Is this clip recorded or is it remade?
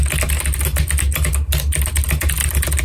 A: recorded